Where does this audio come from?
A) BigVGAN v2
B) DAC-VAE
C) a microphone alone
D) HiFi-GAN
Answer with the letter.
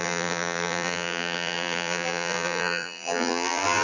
A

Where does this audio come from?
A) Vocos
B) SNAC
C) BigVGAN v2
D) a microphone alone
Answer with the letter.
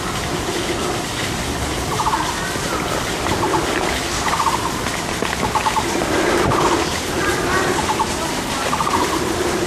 C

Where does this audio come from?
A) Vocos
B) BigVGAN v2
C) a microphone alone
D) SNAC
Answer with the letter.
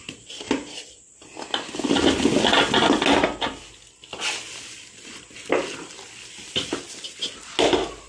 C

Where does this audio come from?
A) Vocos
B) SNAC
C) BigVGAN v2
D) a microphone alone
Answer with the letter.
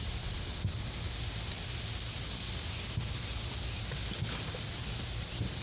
D